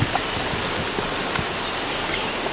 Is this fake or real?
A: real